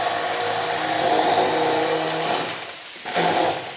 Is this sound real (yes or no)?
yes